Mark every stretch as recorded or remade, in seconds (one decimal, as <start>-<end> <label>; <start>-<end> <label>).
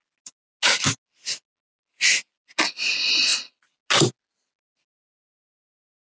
0.0-6.1 recorded